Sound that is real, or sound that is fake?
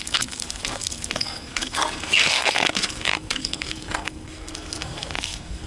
fake